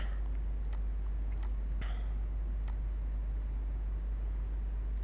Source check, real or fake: real